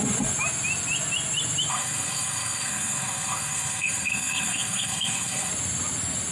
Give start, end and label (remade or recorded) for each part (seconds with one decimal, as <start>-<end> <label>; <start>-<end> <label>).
0.0-1.7 recorded; 1.7-5.5 remade; 5.5-6.3 recorded